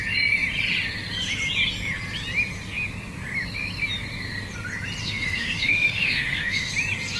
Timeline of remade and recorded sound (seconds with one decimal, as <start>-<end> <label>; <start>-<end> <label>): 0.0-5.0 recorded; 5.0-6.7 remade; 6.7-7.2 recorded